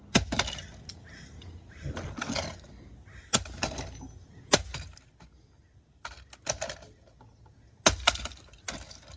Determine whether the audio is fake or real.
real